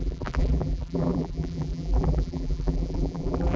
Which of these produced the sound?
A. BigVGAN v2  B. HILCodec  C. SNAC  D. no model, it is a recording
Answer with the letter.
A